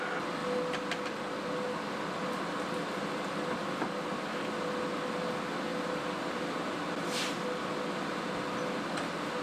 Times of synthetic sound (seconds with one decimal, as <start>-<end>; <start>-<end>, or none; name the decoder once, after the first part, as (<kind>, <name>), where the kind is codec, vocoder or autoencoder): none